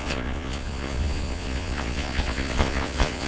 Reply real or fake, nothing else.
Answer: fake